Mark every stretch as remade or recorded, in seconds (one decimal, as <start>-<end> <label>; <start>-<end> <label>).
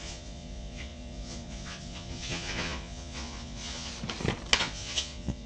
0.0-3.9 remade; 3.9-4.6 recorded; 4.6-5.5 remade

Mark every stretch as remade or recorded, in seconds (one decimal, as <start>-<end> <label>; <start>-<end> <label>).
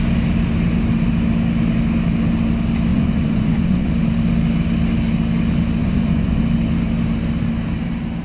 0.0-2.9 recorded; 2.9-3.9 remade; 3.9-5.8 recorded; 5.8-6.4 remade; 6.4-8.2 recorded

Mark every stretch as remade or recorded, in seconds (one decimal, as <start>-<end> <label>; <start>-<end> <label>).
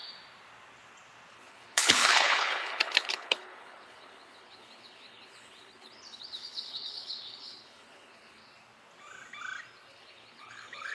0.0-1.3 recorded; 1.3-8.4 remade; 8.4-9.9 recorded; 9.9-10.9 remade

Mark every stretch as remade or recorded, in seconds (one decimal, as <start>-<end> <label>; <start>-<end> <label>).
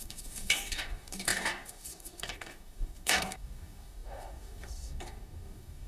0.0-5.9 remade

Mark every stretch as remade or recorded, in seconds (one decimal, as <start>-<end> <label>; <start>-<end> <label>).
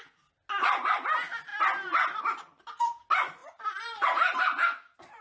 0.0-3.4 recorded; 3.4-4.4 remade; 4.4-5.2 recorded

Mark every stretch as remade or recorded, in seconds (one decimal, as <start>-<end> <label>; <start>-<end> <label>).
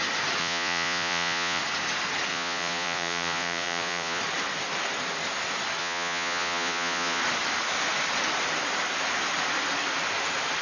0.0-0.4 recorded; 0.4-1.6 remade; 1.6-2.3 recorded; 2.3-4.2 remade; 4.2-5.8 recorded; 5.8-7.2 remade; 7.2-10.6 recorded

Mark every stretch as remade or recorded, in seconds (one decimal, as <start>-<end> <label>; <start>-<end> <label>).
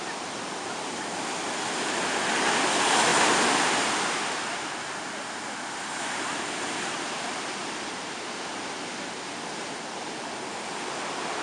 0.0-3.1 recorded; 3.1-3.7 remade; 3.7-7.6 recorded; 7.6-8.9 remade; 8.9-11.4 recorded